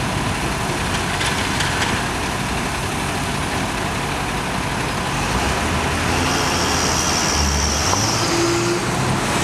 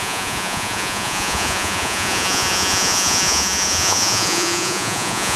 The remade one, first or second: second